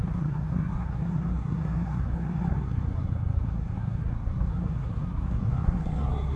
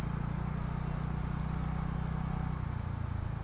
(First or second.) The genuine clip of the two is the second